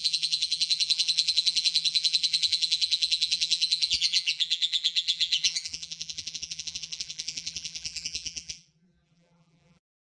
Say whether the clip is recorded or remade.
remade